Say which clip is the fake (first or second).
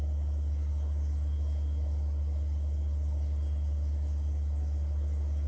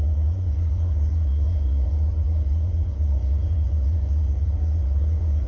second